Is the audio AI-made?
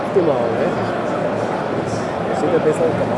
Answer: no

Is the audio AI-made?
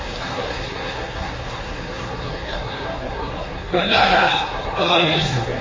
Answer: yes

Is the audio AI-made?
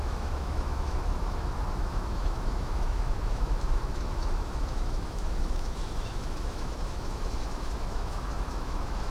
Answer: yes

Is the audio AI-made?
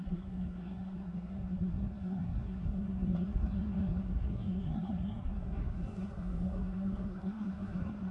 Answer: yes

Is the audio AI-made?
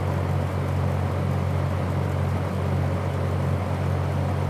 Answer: no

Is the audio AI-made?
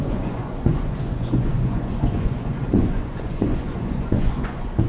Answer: yes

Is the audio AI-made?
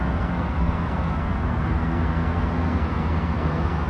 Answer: yes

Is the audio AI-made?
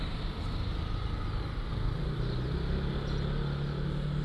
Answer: no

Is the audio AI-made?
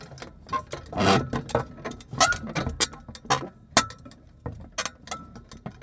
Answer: no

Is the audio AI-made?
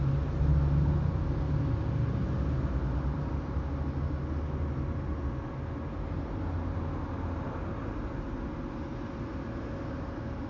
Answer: no